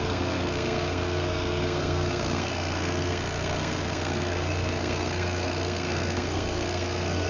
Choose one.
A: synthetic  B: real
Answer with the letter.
A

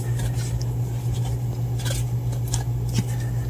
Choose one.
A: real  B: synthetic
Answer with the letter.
A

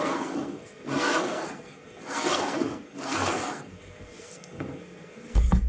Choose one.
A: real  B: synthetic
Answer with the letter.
B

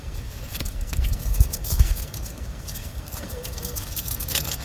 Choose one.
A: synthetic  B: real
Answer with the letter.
A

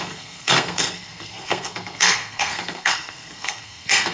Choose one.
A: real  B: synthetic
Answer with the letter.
B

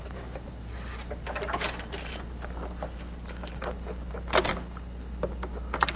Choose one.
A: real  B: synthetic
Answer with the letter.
A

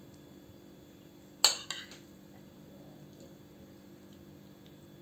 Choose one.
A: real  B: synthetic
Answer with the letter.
A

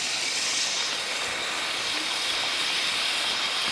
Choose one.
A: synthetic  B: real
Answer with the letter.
B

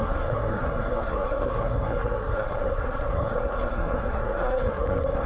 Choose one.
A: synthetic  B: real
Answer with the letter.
A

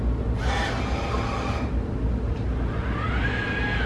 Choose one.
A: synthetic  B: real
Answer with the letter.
B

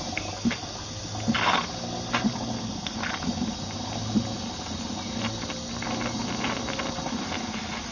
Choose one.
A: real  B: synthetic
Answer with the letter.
A